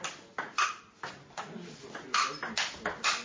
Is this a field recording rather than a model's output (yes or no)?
yes